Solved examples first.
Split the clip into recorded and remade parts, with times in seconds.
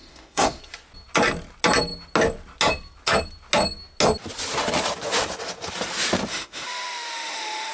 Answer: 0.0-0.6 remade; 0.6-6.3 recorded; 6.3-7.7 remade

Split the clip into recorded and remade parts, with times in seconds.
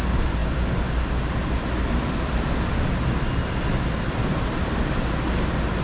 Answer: 0.0-5.8 recorded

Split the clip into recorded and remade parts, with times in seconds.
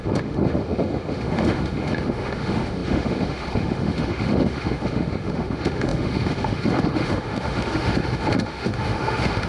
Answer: 0.0-9.5 remade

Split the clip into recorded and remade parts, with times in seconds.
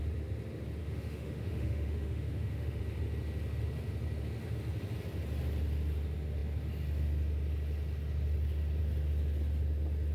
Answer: 0.0-0.8 recorded; 0.8-2.8 remade; 2.8-10.1 recorded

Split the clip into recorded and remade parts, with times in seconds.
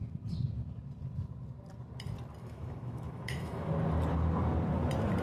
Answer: 0.0-2.4 recorded; 2.4-3.7 remade; 3.7-5.2 recorded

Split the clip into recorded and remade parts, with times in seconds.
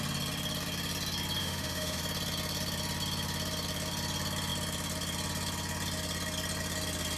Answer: 0.0-1.4 recorded; 1.4-2.0 remade; 2.0-7.2 recorded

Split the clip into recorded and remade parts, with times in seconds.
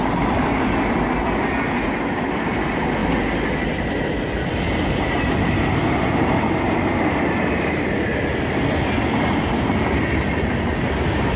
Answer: 0.0-11.4 recorded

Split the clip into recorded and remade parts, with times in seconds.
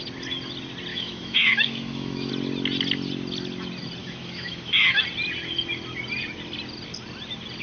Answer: 0.0-0.9 recorded; 0.9-2.3 remade; 2.3-4.0 recorded; 4.0-5.0 remade; 5.0-7.6 recorded